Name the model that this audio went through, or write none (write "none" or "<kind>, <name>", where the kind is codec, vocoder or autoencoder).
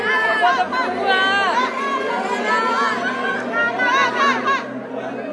none